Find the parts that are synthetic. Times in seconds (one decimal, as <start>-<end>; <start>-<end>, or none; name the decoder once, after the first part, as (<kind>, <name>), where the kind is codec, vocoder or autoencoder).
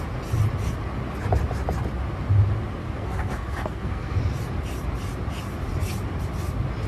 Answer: 2.8-4.2 (codec, SNAC)